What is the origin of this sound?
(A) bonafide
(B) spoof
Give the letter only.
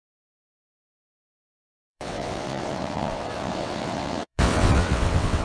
B